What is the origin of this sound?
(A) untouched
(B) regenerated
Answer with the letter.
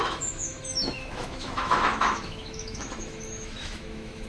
B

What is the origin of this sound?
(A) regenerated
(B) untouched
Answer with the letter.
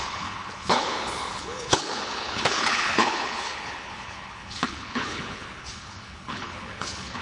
A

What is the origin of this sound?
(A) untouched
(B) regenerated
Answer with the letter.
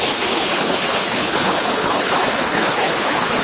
B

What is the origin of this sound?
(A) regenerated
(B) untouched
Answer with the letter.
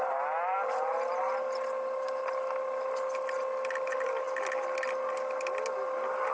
B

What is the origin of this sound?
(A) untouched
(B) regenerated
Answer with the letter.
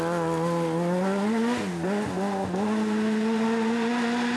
A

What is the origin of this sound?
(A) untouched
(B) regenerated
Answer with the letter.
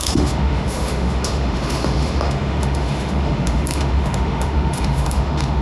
B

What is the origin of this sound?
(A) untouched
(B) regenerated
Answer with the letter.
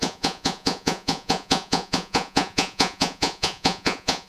B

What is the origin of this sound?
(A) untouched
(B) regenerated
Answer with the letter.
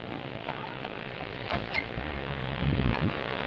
B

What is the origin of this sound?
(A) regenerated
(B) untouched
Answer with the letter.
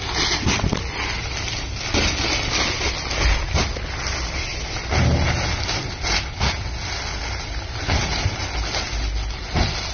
B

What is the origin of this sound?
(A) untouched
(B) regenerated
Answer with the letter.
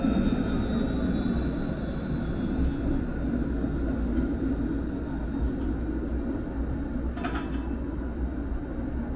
A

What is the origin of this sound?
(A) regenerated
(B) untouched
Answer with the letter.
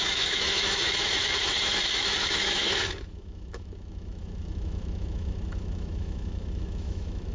A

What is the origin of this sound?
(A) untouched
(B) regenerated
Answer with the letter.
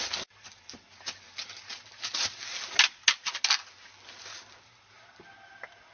A